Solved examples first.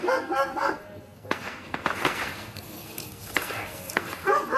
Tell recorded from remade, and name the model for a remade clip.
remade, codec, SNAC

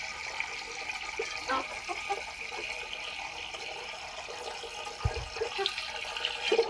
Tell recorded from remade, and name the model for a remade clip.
recorded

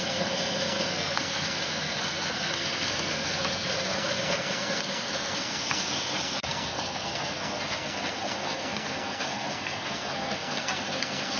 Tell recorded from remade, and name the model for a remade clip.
remade, codec, SNAC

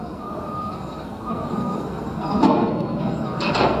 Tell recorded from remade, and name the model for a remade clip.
remade, codec, SNAC